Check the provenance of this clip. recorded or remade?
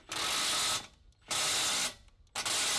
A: recorded